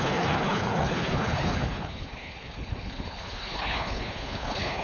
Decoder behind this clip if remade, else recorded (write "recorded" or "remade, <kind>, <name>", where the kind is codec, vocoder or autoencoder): remade, codec, HILCodec